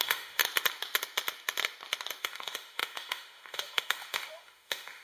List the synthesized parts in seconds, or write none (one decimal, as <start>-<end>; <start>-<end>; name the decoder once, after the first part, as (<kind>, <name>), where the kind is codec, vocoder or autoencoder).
0.0-0.4 (autoencoder, DAC-VAE); 2.2-5.0